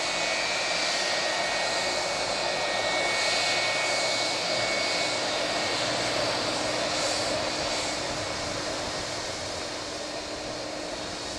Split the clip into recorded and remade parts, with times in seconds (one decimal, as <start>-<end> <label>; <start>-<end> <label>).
0.0-11.4 recorded